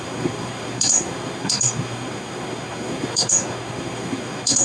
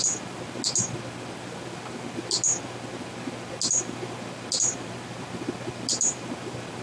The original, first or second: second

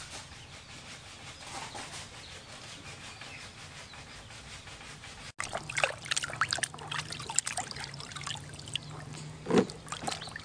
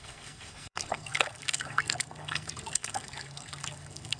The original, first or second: first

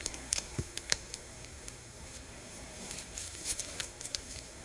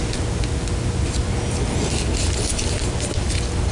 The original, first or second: second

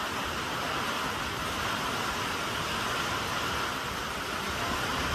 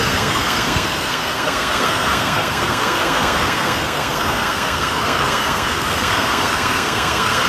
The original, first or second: first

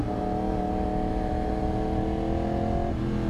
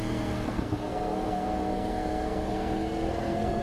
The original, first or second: first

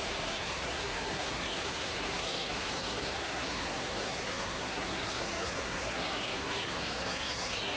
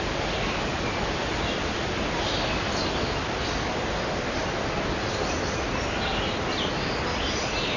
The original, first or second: second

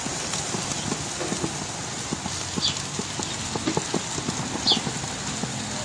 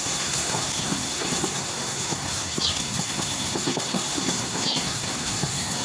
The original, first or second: first